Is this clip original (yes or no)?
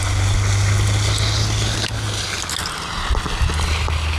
yes